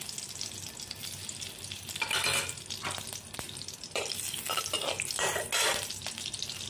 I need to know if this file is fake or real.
real